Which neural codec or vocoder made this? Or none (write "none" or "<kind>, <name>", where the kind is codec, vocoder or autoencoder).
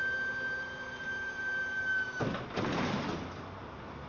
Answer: none